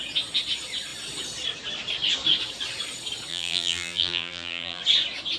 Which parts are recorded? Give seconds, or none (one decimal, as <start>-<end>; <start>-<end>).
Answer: 0.0-3.3; 4.8-5.4